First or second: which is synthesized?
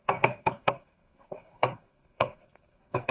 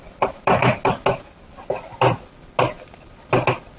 first